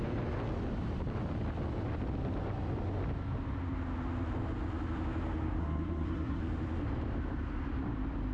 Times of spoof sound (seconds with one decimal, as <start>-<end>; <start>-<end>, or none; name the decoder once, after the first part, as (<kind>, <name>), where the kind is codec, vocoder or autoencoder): 5.6-6.4 (codec, SNAC)